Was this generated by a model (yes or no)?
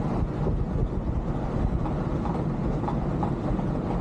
no